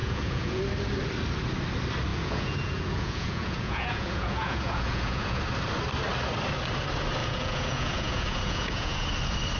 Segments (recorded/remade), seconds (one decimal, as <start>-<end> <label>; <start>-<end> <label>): 0.0-0.6 remade; 0.6-2.1 recorded; 2.1-5.4 remade; 5.4-7.2 recorded; 7.2-9.1 remade; 9.1-9.6 recorded

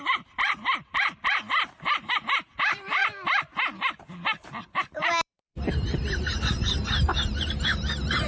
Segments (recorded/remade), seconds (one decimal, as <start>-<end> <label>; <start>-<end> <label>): 0.0-3.0 remade; 3.0-4.7 recorded; 4.7-8.3 remade

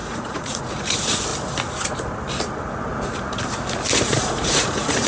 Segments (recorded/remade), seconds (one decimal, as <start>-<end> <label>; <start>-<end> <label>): 0.0-1.3 remade; 1.3-4.0 recorded; 4.0-5.1 remade

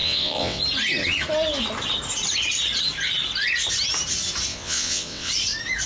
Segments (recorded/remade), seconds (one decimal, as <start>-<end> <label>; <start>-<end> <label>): 0.0-0.6 remade; 0.6-4.5 recorded; 4.5-5.3 remade; 5.3-5.9 recorded